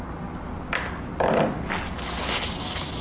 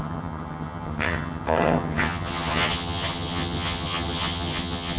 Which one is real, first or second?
first